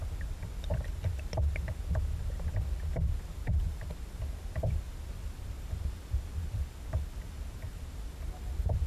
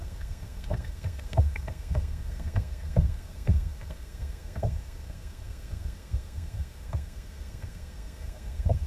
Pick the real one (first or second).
first